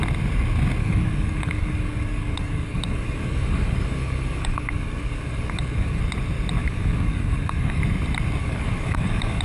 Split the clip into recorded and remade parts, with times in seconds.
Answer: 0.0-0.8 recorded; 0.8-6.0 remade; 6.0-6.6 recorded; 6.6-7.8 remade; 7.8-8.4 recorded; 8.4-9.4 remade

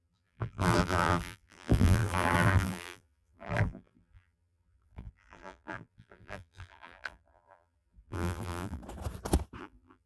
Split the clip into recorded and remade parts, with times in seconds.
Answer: 0.0-8.8 remade; 8.8-9.6 recorded; 9.6-10.1 remade